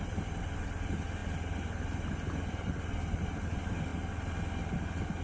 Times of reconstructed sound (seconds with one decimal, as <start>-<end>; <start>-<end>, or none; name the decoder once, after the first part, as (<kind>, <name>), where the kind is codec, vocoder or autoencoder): none